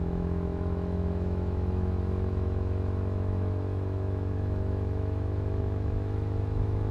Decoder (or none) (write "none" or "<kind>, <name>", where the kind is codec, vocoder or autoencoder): autoencoder, DAC-VAE